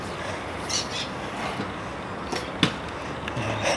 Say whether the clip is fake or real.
real